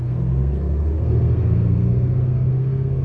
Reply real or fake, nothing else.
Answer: fake